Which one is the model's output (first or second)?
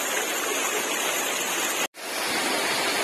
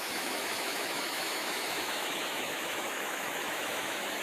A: second